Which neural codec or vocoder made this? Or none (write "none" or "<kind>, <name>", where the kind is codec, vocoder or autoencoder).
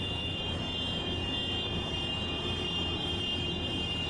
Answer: vocoder, Vocos